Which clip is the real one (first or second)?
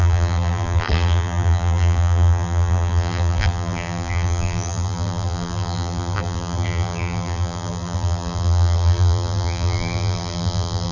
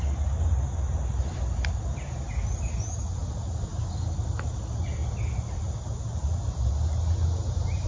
second